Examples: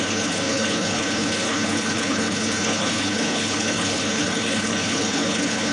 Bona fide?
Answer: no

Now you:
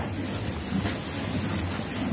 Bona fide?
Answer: yes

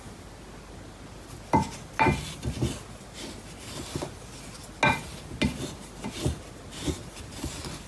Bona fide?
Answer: yes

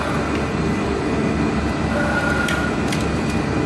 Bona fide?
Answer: yes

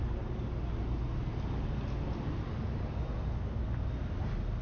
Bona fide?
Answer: yes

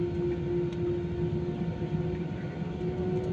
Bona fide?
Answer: yes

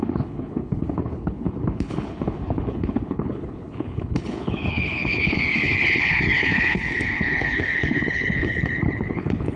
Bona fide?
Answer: no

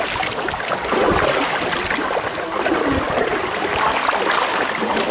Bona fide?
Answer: yes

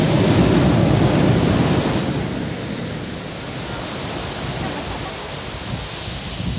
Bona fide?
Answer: yes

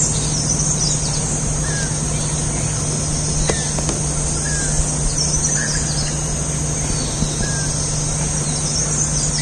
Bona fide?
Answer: yes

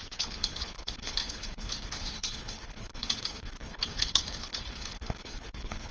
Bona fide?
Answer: no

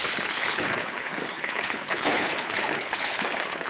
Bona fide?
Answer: no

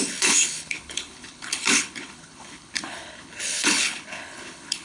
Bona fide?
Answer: no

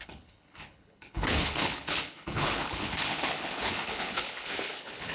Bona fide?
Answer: no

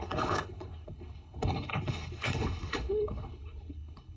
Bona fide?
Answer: no